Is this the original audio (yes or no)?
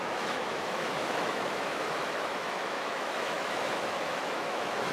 no